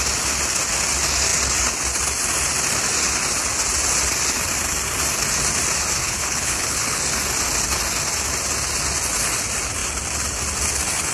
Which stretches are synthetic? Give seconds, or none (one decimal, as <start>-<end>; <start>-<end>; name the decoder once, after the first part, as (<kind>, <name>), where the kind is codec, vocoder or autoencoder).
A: 6.0-7.0 (codec, HILCodec)